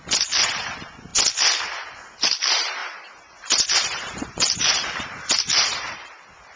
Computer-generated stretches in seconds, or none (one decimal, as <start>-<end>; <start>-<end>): 0.0-1.1; 1.9-6.6